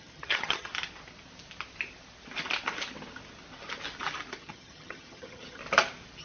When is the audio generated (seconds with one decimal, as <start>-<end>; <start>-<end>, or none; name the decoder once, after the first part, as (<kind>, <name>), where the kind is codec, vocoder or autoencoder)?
0.0-0.7 (vocoder, HiFi-GAN); 4.4-5.6